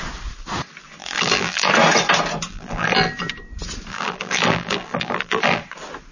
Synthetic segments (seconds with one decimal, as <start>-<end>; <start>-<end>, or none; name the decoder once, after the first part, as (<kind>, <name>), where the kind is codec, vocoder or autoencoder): 1.0-1.7 (vocoder, BigVGAN v2); 2.5-3.1; 3.9-5.6